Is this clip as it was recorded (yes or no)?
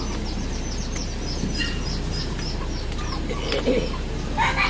yes